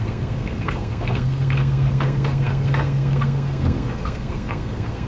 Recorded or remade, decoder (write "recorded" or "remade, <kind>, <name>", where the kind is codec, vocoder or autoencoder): remade, codec, SNAC